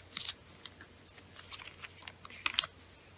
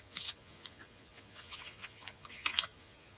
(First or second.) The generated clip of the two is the second